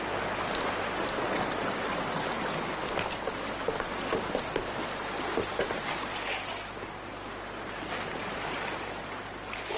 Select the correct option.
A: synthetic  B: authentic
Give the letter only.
B